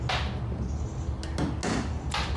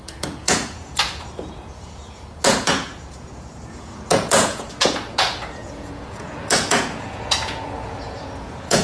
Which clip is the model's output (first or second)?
second